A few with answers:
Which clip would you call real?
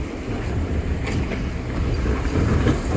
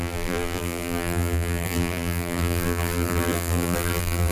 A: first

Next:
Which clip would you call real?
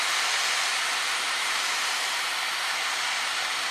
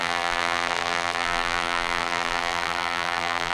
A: first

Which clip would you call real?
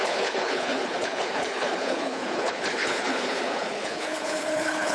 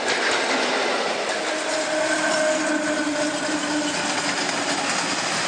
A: second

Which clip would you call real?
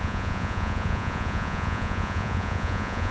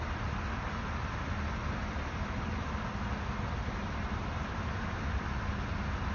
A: second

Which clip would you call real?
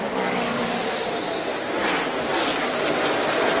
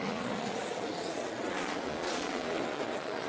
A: first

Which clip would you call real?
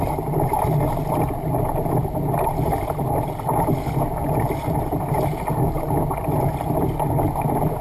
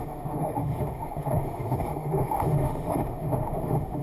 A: first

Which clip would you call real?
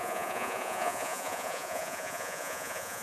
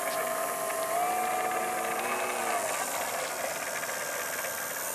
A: second